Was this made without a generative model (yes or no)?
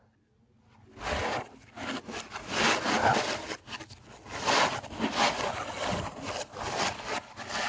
yes